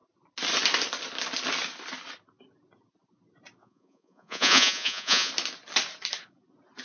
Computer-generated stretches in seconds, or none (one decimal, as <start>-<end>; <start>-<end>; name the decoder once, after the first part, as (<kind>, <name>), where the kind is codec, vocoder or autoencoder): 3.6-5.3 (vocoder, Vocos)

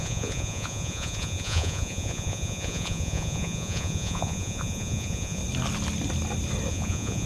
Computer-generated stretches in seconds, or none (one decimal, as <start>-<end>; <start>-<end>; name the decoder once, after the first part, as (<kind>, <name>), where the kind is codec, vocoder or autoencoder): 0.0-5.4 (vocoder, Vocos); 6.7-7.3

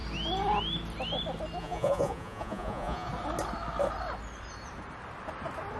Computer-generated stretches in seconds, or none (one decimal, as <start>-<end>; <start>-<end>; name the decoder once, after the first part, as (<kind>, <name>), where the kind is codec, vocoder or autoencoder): 1.6-3.1 (vocoder, Vocos)